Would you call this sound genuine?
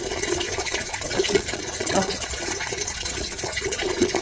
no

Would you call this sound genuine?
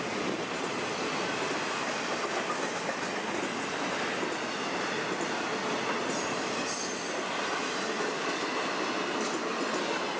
yes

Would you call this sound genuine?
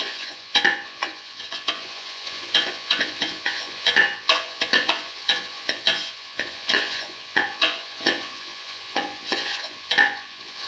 no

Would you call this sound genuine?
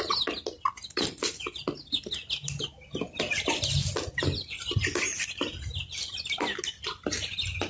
yes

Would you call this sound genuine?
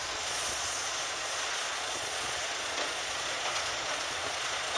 no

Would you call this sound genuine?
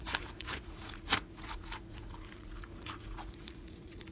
no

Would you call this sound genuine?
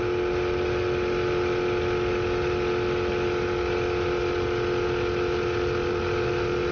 yes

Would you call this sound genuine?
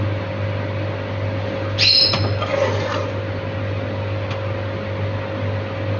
yes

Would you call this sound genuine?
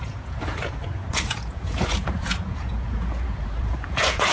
no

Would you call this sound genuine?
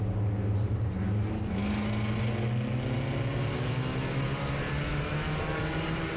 yes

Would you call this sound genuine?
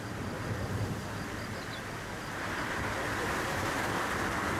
yes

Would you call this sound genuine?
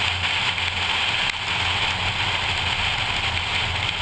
yes